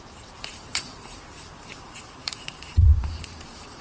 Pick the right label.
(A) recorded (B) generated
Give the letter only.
B